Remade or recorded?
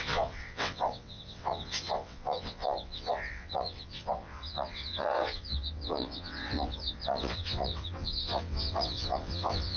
remade